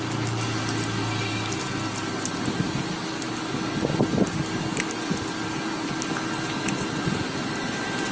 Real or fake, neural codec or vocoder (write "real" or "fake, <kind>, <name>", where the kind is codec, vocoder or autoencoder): real